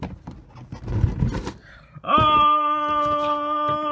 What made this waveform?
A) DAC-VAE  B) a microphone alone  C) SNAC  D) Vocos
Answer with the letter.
B